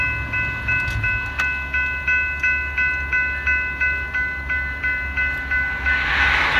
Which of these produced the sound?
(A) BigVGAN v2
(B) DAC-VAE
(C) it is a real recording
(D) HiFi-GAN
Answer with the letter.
C